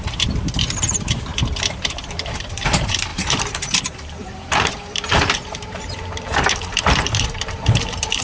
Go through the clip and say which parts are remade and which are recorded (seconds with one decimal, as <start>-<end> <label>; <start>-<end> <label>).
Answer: 0.0-8.2 remade